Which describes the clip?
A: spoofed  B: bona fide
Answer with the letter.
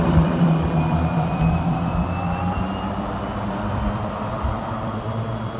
A